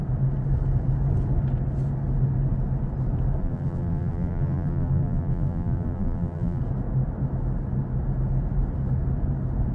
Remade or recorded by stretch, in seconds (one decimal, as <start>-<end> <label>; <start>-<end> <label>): 0.0-3.4 recorded; 3.4-6.6 remade; 6.6-9.7 recorded